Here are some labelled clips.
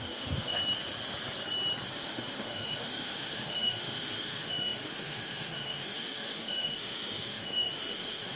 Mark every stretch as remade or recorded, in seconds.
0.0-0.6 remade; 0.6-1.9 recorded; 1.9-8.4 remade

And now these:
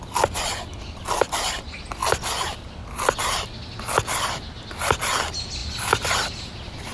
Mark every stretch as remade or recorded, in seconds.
0.0-6.9 recorded

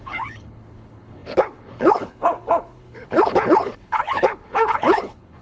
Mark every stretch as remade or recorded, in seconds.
0.0-5.4 remade

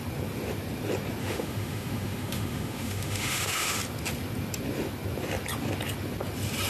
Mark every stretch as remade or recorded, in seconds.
0.0-1.2 recorded; 1.2-3.8 remade; 3.8-6.7 recorded

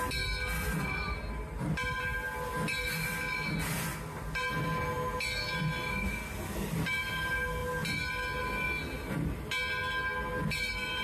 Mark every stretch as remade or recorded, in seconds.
0.0-11.0 recorded